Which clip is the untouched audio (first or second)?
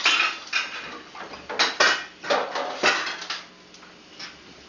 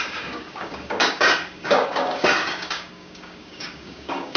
first